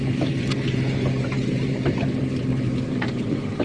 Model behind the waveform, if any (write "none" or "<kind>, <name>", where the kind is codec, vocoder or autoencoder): vocoder, BigVGAN v2